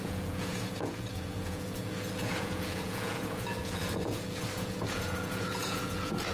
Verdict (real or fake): fake